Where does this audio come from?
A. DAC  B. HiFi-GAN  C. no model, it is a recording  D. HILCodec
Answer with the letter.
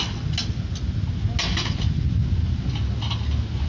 C